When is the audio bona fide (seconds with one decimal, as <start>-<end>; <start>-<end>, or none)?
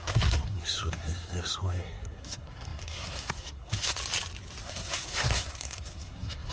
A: 4.0-4.6